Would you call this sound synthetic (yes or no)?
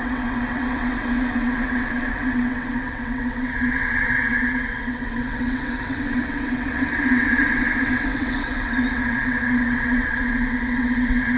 yes